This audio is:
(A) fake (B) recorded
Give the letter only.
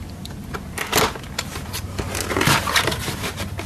B